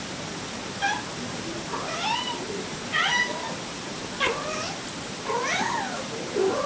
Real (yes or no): yes